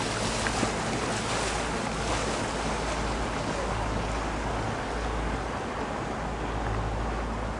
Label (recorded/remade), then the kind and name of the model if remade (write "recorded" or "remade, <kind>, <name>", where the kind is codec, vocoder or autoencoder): recorded